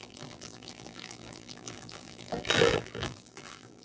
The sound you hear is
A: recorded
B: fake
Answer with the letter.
B